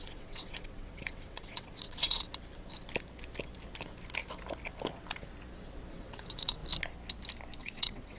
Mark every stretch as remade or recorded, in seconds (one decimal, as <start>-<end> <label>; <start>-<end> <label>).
0.0-2.3 remade; 2.3-5.9 recorded; 5.9-6.6 remade; 6.6-7.6 recorded; 7.6-8.2 remade